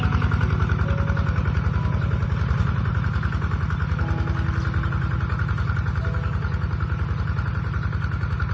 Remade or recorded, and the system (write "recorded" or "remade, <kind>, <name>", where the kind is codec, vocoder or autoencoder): recorded